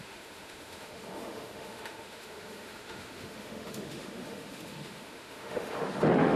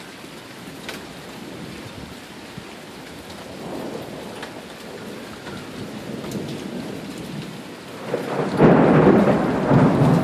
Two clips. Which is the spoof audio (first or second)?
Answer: first